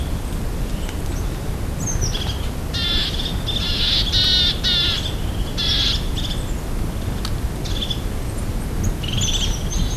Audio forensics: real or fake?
real